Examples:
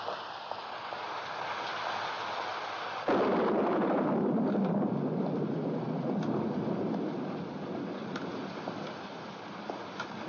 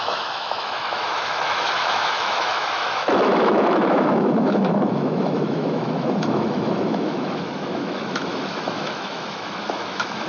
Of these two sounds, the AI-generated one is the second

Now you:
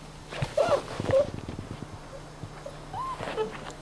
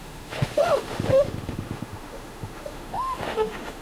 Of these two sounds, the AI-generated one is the second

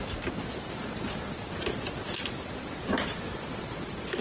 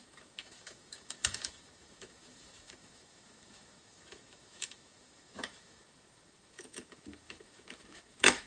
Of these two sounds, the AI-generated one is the second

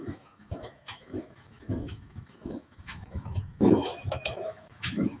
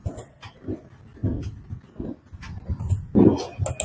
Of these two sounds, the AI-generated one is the first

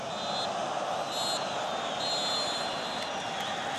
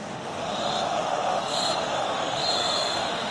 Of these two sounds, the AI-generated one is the second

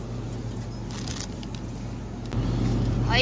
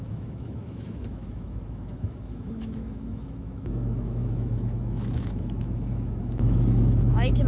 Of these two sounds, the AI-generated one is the second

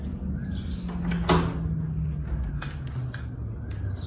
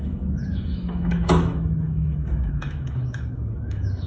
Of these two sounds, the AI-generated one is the second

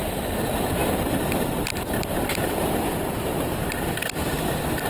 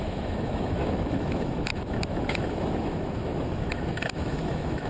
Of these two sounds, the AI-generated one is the second